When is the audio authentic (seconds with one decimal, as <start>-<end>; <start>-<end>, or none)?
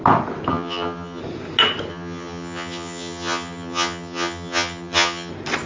0.0-0.5; 1.2-1.9; 5.3-5.7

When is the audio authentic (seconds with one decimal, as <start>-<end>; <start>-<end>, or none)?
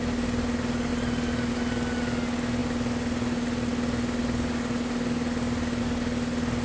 0.0-6.6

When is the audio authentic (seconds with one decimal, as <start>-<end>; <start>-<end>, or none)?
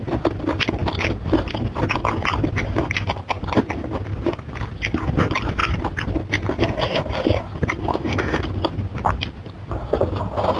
0.0-7.8; 8.4-10.6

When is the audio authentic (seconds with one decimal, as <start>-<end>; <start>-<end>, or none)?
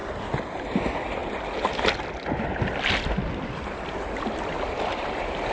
0.0-5.5